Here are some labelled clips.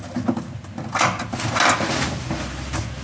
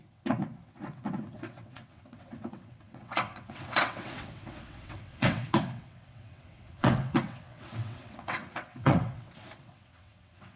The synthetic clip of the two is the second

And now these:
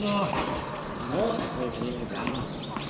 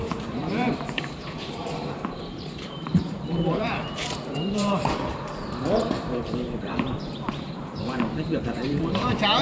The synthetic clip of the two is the second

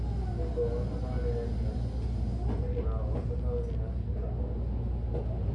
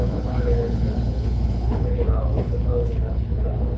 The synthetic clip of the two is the second